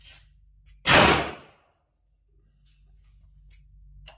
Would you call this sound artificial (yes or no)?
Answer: no